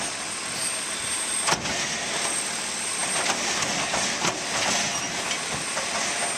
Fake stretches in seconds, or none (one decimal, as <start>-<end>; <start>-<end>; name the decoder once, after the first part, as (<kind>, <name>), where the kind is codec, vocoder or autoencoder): none